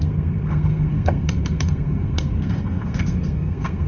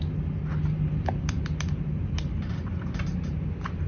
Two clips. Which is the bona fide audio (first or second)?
second